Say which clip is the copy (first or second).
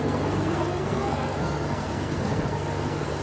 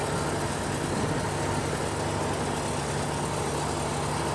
first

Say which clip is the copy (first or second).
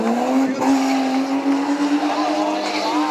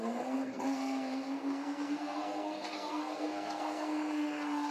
second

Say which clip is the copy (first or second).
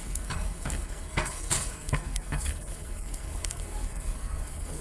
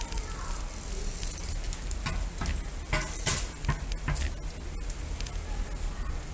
first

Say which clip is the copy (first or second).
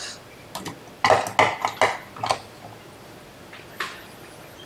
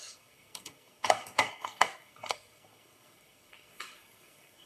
second